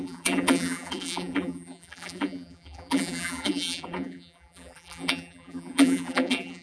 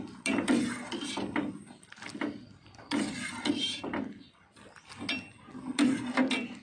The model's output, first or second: first